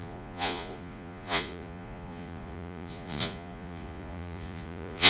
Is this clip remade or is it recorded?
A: remade